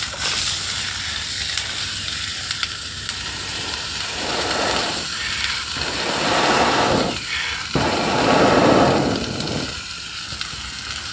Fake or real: fake